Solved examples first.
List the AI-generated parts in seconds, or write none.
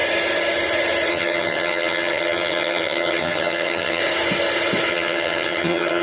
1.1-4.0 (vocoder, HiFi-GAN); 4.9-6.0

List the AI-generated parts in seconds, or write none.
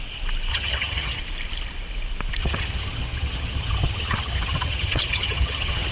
0.5-1.2 (vocoder, HiFi-GAN); 2.4-5.9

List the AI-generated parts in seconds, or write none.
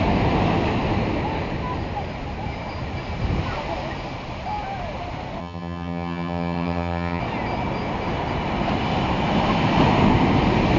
5.4-7.2 (vocoder, HiFi-GAN)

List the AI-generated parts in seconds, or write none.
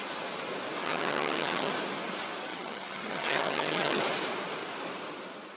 0.8-1.7 (vocoder, HiFi-GAN); 2.5-4.0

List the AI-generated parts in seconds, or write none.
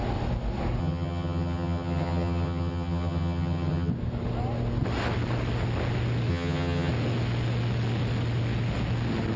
0.8-3.9 (vocoder, HiFi-GAN); 6.3-6.9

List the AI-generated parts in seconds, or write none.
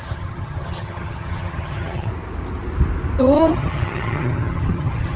0.0-2.1 (vocoder, HiFi-GAN); 3.2-5.2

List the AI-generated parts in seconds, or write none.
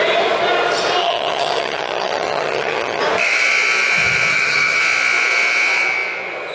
1.0-3.0 (vocoder, HiFi-GAN); 4.3-4.8